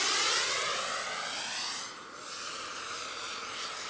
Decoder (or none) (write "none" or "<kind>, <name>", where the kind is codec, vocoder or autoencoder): none